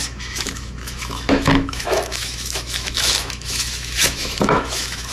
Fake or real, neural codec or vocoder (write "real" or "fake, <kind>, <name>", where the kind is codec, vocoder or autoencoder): fake, autoencoder, DAC-VAE